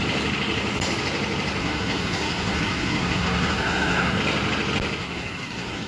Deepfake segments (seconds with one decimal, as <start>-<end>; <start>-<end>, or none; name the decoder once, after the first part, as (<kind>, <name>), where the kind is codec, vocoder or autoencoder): 1.6-4.2 (codec, SNAC); 5.0-5.9